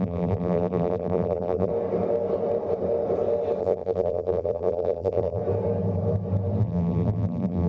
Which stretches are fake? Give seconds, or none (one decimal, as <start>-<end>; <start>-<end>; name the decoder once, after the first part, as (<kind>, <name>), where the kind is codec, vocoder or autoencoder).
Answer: 0.0-1.7 (vocoder, BigVGAN v2); 3.6-5.4; 6.6-7.7